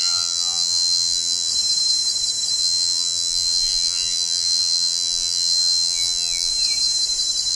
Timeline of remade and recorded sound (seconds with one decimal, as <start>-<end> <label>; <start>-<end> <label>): 0.0-1.5 remade; 1.5-2.6 recorded; 2.6-6.5 remade; 6.5-7.5 recorded